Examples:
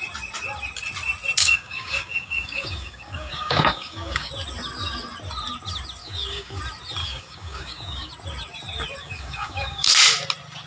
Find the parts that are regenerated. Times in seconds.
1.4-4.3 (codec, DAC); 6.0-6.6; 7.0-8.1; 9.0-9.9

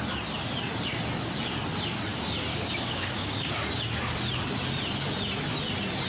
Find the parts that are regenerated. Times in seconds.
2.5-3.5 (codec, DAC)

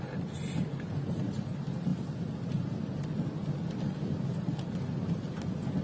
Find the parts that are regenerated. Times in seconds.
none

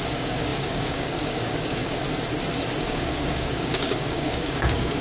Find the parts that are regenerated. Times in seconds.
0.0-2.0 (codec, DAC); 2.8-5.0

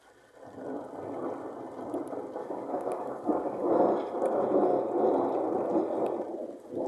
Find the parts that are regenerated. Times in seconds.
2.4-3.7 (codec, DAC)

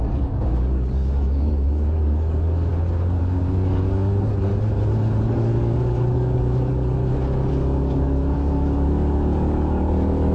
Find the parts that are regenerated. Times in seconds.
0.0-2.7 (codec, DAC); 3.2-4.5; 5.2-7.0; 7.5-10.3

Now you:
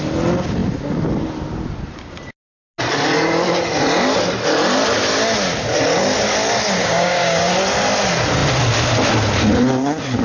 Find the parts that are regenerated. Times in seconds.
6.8-7.5 (codec, DAC)

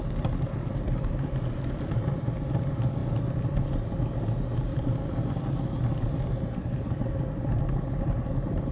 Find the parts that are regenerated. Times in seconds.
none